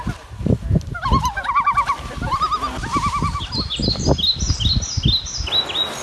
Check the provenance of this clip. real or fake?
real